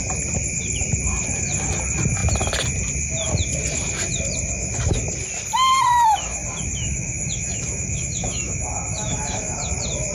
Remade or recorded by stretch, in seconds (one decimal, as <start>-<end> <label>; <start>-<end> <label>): 0.0-6.8 recorded; 6.8-9.7 remade; 9.7-10.1 recorded